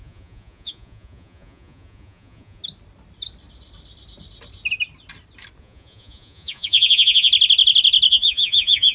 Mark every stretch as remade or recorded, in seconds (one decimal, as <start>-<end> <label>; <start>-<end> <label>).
0.0-2.6 remade; 2.6-5.6 recorded; 5.6-7.3 remade; 7.3-8.1 recorded; 8.1-8.9 remade